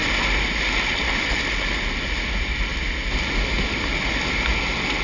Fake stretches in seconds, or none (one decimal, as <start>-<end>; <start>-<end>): none